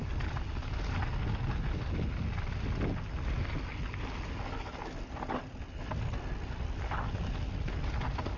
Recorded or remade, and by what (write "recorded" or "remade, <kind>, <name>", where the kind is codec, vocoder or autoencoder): recorded